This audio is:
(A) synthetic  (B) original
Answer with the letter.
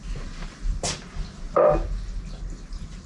B